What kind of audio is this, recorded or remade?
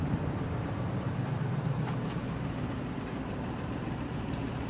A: remade